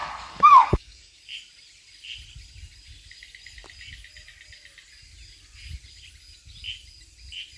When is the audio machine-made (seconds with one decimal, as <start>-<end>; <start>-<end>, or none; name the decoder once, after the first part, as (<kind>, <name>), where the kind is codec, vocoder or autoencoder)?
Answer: 0.0-1.2 (codec, DAC)